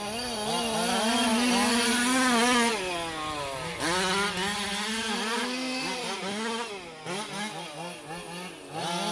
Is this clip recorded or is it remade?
recorded